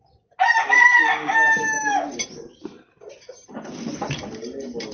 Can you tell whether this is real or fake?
real